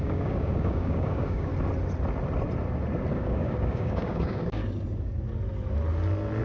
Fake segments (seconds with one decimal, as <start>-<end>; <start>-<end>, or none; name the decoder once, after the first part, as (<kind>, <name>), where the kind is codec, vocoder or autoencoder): 0.0-1.5 (codec, DAC); 3.1-4.6